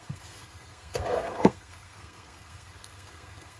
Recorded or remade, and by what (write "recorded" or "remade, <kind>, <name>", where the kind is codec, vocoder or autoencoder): remade, codec, SNAC